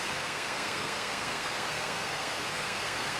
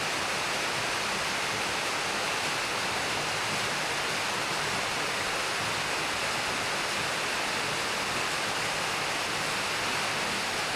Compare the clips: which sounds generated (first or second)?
first